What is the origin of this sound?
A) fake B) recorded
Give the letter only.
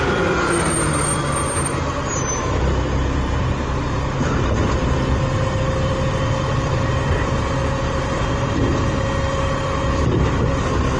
B